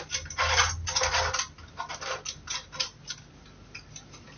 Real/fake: real